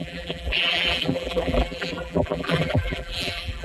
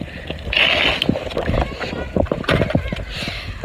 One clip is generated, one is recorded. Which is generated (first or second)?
first